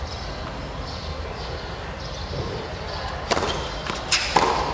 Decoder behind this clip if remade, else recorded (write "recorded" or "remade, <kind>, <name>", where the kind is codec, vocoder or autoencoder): recorded